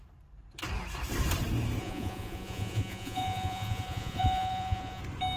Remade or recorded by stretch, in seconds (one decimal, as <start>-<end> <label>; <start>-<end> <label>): 0.0-1.8 recorded; 1.8-5.0 remade; 5.0-5.4 recorded

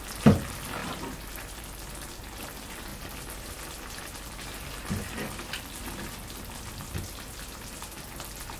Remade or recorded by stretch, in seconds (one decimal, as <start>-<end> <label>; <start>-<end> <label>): 0.0-0.8 recorded; 0.8-1.6 remade; 1.6-2.9 recorded; 2.9-6.1 remade; 6.1-8.6 recorded

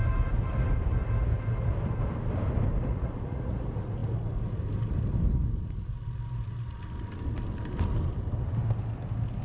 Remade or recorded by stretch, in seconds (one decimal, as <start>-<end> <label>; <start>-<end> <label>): 0.0-2.9 recorded; 2.9-3.6 remade; 3.6-9.4 recorded